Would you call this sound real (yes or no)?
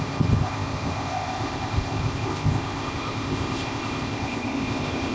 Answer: no